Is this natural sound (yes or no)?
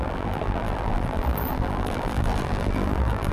no